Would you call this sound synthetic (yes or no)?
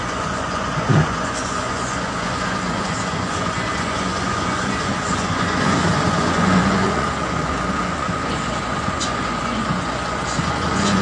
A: yes